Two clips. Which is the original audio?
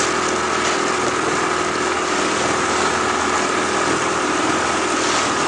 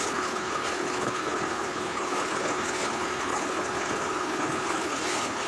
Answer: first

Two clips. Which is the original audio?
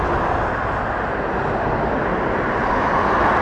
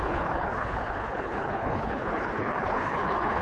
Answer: first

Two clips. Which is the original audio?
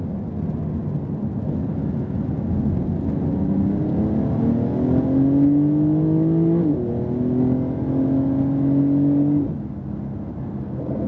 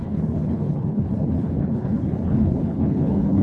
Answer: first